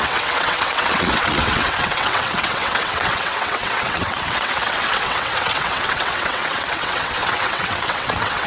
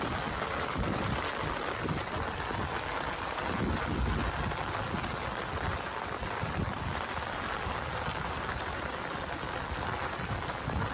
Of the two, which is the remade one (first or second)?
first